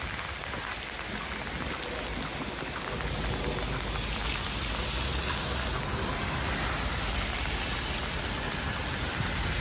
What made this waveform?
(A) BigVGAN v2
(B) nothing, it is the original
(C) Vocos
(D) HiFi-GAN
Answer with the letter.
B